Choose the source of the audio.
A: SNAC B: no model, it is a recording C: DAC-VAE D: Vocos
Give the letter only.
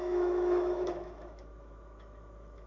C